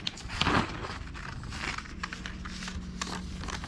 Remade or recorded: recorded